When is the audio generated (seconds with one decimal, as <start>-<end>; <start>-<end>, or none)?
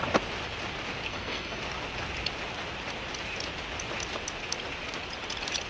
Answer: 1.1-1.6